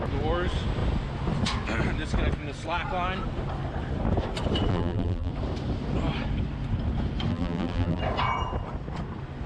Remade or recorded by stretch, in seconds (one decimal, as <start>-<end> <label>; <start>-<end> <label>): 0.0-4.7 recorded; 4.7-5.3 remade; 5.3-7.3 recorded; 7.3-8.0 remade; 8.0-9.5 recorded